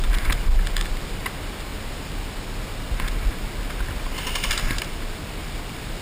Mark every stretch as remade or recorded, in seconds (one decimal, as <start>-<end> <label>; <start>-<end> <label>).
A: 0.0-6.0 recorded